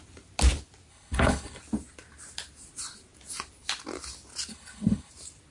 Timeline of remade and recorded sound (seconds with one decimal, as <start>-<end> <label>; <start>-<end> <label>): 0.0-0.9 recorded; 0.9-1.6 remade; 1.6-4.5 recorded; 4.5-5.1 remade; 5.1-5.5 recorded